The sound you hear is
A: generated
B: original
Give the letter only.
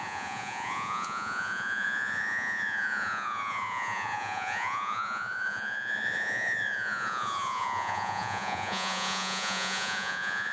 A